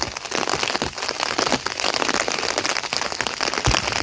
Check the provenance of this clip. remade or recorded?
recorded